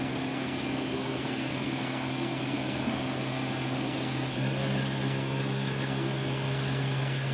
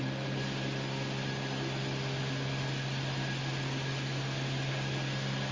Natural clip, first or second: second